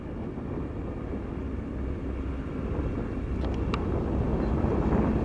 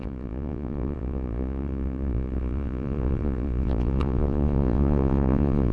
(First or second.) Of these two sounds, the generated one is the second